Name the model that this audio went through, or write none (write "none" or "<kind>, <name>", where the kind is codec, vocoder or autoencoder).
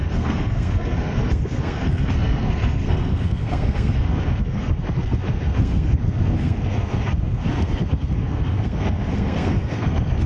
codec, SNAC